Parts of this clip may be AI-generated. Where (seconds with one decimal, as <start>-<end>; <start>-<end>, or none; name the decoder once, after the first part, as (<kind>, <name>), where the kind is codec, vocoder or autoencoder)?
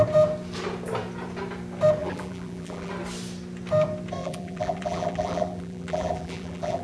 2.0-2.9 (vocoder, BigVGAN v2); 4.2-6.8